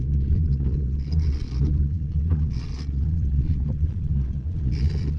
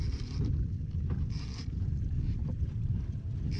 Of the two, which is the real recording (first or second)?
second